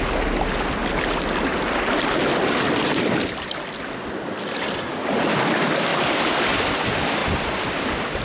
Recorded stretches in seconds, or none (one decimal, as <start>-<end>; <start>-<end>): 0.0-8.2